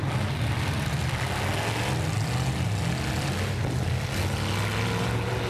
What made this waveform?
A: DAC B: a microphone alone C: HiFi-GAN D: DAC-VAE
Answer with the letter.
B